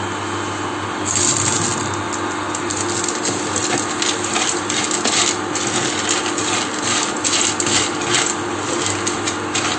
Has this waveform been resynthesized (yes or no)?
no